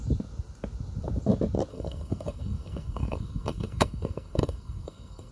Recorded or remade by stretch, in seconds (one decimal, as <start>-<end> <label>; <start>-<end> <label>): 0.0-1.7 recorded; 1.7-5.3 remade